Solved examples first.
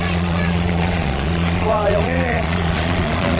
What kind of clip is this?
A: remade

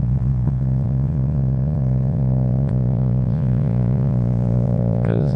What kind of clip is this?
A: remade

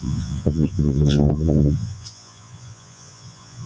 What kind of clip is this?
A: remade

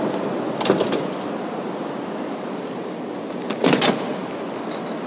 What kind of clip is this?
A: recorded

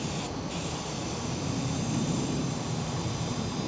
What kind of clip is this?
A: recorded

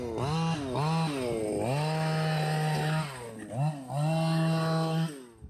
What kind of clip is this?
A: recorded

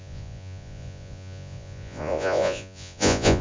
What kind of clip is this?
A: remade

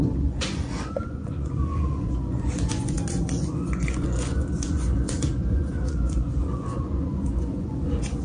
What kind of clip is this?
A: remade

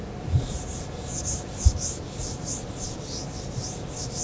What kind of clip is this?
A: recorded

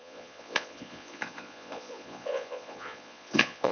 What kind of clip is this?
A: remade